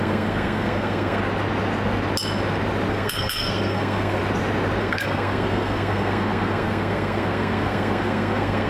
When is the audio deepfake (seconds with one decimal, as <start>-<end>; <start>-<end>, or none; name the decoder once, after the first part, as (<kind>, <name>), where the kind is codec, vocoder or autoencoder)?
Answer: 0.0-1.2 (codec, SNAC); 2.9-4.2; 4.8-8.7